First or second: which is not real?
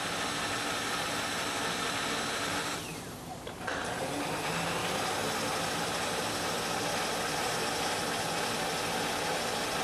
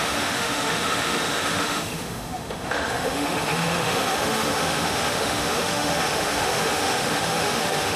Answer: second